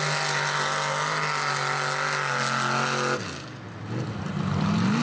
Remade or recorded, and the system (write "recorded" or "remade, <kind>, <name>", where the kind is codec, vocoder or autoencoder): recorded